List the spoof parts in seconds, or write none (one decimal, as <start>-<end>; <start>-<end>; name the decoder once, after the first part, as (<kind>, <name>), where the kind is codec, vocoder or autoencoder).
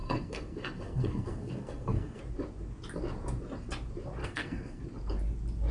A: 0.0-2.2 (codec, SNAC); 4.2-4.8